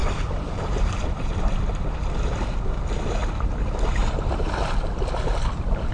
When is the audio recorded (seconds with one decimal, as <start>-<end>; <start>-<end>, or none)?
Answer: 1.3-5.9